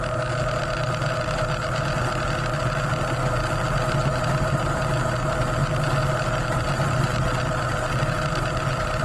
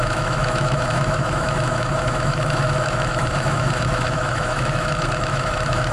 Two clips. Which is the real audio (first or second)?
first